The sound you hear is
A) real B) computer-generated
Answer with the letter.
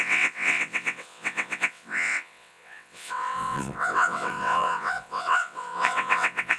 B